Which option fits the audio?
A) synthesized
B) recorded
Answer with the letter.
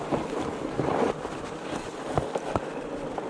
B